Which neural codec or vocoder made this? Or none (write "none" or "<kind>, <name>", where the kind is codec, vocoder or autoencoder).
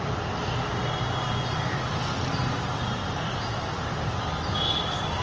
none